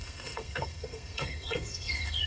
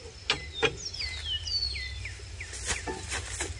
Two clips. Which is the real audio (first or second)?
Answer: second